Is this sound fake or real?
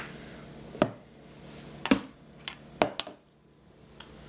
real